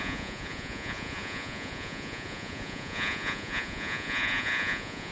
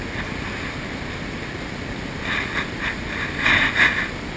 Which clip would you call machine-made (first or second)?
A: first